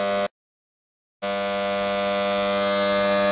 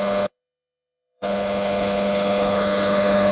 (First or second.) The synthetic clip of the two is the second